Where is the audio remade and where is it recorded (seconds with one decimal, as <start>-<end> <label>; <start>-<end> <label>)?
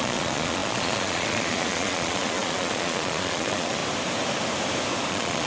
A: 0.0-3.8 remade; 3.8-5.1 recorded; 5.1-5.5 remade